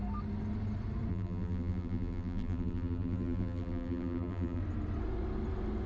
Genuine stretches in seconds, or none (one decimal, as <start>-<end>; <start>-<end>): 0.0-1.1; 4.6-5.9